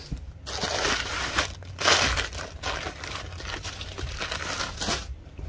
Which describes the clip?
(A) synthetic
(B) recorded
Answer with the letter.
B